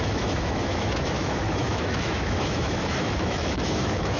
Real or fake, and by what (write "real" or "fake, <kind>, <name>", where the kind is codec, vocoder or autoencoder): fake, autoencoder, DAC-VAE